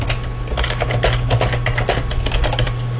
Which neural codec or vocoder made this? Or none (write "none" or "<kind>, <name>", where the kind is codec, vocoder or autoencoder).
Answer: none